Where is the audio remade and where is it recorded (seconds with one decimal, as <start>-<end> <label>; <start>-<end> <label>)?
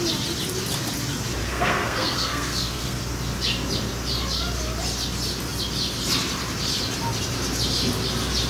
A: 0.0-1.4 recorded; 1.4-3.0 remade; 3.0-8.5 recorded